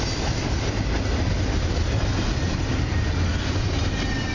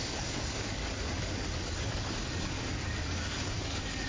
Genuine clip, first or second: first